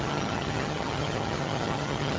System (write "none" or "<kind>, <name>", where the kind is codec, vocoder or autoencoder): vocoder, HiFi-GAN